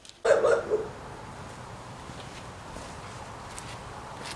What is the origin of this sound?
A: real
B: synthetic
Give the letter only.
A